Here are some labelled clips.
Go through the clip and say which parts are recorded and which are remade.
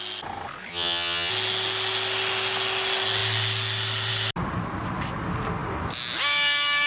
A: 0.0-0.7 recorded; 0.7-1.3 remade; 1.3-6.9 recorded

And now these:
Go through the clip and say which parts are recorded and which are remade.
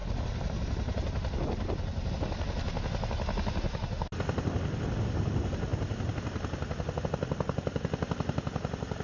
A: 0.0-9.0 recorded